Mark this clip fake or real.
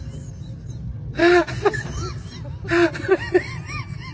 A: real